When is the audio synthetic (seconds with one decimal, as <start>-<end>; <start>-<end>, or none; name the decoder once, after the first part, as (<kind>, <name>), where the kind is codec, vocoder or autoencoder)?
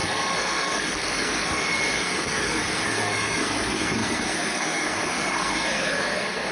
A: 0.0-6.5 (codec, SNAC)